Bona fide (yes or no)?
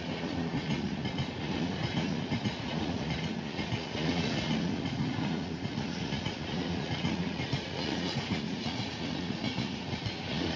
no